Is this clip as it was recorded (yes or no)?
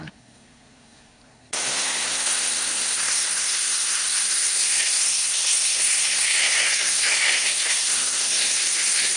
no